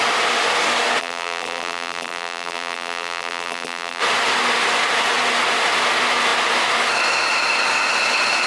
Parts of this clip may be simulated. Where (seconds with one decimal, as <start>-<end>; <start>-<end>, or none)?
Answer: 1.0-4.0